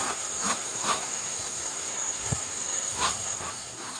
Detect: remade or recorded remade